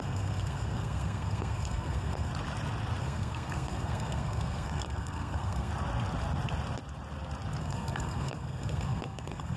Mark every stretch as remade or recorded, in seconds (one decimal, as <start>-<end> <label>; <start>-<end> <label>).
0.0-2.3 remade; 2.3-3.0 recorded; 3.0-5.7 remade; 5.7-7.6 recorded; 7.6-9.6 remade